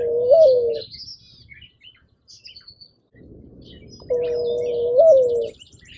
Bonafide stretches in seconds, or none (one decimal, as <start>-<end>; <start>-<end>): 0.0-6.0